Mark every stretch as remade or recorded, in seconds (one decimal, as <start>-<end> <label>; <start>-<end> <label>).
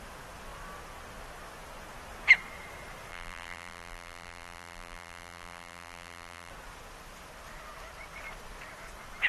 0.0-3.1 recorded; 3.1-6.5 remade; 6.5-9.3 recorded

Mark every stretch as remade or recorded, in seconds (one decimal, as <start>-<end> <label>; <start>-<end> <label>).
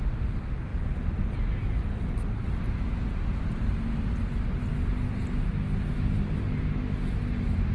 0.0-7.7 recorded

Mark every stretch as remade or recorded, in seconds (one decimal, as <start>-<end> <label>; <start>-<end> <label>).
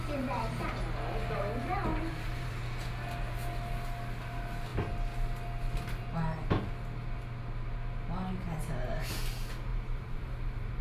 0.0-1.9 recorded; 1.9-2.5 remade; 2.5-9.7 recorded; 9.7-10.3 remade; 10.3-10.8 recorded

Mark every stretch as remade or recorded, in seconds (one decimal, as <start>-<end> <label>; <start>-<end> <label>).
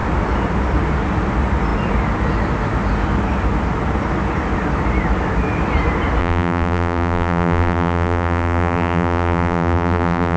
0.0-6.2 recorded; 6.2-10.4 remade